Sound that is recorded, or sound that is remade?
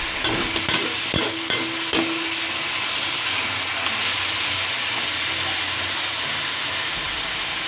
recorded